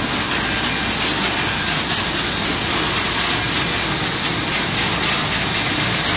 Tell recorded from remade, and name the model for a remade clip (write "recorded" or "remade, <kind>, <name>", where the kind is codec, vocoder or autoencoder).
recorded